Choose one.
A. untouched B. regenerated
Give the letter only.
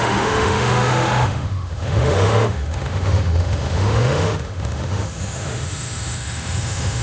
B